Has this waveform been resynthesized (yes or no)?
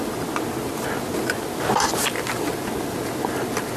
no